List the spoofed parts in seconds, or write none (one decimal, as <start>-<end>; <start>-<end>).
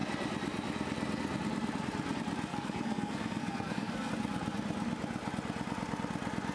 2.5-4.1